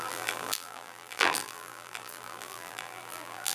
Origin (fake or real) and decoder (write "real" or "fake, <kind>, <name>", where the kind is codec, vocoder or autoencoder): fake, vocoder, BigVGAN v2